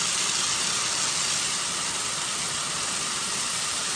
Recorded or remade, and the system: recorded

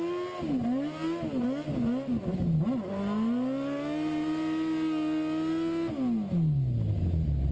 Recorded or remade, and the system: recorded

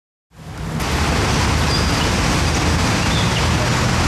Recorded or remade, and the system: recorded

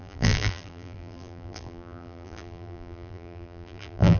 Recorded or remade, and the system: remade, vocoder, BigVGAN v2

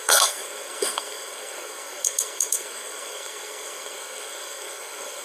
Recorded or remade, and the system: remade, codec, SNAC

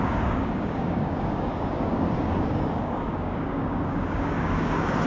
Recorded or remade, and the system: remade, codec, DAC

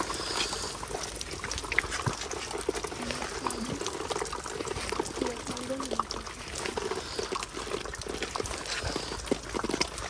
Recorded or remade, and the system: recorded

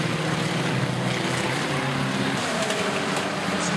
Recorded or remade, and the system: recorded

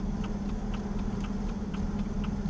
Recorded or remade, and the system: recorded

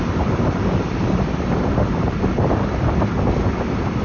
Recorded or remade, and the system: recorded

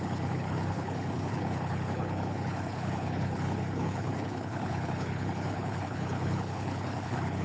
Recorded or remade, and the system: remade, codec, HILCodec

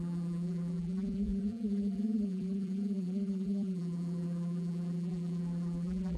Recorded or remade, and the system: remade, vocoder, BigVGAN v2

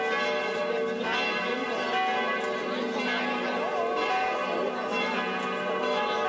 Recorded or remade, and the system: recorded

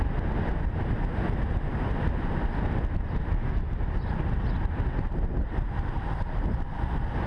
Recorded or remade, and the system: recorded